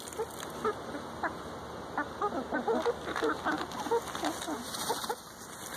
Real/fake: real